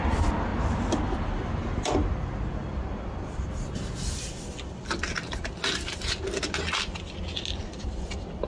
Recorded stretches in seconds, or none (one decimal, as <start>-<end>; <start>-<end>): 0.0-8.5